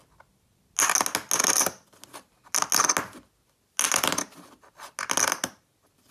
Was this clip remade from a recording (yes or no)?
no